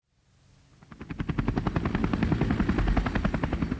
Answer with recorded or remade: recorded